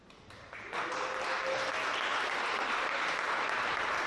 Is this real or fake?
real